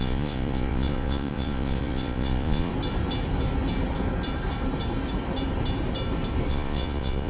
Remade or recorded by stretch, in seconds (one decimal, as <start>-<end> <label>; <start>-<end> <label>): 0.0-2.7 remade; 2.7-6.5 recorded; 6.5-7.3 remade